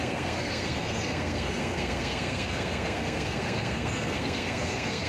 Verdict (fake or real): fake